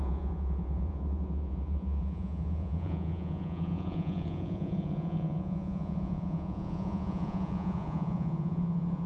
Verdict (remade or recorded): remade